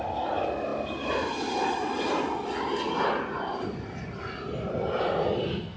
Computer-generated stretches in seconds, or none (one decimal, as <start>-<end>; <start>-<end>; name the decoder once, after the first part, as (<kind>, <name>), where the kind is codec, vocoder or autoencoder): none